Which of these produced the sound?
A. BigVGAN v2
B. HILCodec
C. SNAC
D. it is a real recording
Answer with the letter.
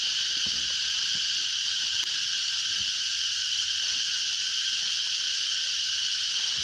D